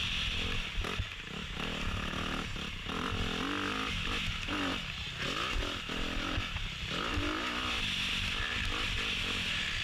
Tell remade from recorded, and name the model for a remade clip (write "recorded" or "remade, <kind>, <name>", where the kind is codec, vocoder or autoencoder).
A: recorded